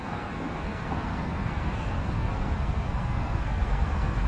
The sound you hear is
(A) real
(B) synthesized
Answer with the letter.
B